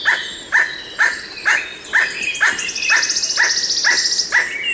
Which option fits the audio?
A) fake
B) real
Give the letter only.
B